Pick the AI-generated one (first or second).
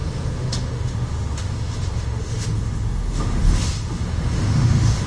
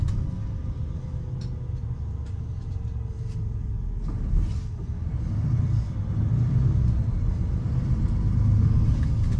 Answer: first